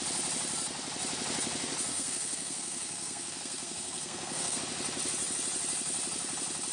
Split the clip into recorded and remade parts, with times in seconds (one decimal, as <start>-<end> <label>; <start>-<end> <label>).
0.0-1.9 recorded; 1.9-4.6 remade; 4.6-6.7 recorded